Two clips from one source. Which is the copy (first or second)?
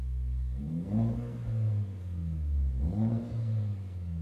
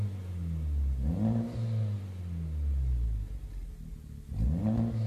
first